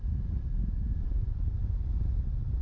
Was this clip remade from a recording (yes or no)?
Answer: yes